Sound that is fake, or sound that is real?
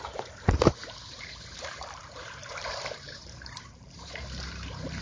fake